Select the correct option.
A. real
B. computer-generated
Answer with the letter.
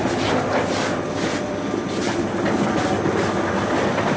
A